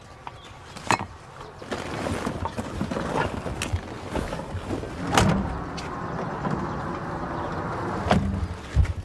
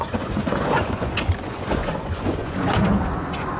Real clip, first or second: first